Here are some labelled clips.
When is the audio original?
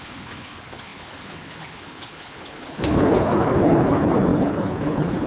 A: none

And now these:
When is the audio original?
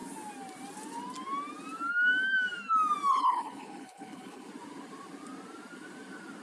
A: 0.0-3.1; 4.5-6.4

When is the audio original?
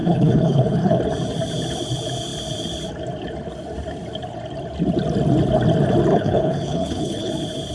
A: 1.0-6.1; 7.3-7.7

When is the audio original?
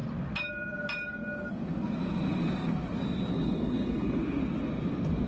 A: 0.0-3.3; 4.2-5.3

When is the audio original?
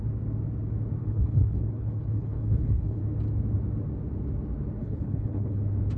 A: 0.0-1.0; 3.0-4.8; 5.6-6.0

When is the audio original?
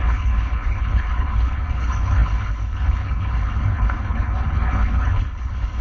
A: none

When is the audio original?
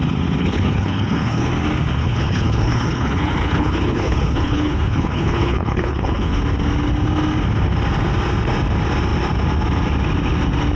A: 0.0-0.4; 1.5-2.0; 6.4-10.8